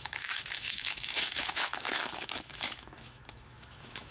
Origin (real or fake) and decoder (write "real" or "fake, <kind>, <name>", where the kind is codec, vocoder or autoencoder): fake, autoencoder, DAC-VAE